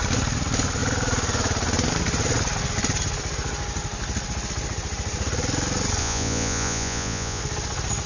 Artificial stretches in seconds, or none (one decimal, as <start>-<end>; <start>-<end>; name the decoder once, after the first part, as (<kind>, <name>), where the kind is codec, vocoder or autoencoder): 6.0-7.4 (vocoder, Vocos)